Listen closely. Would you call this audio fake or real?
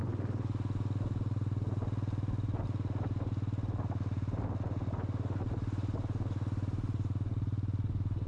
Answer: real